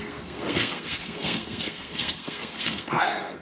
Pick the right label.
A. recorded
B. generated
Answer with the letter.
B